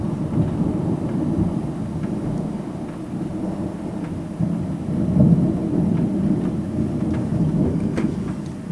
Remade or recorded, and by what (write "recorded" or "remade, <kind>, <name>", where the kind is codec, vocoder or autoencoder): recorded